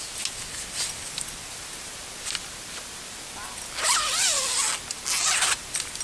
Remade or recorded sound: recorded